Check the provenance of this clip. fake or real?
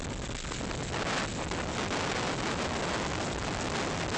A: real